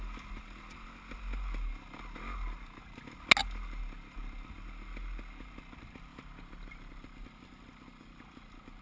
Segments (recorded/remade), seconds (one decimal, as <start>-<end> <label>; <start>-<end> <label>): 0.0-6.1 recorded; 6.1-8.8 remade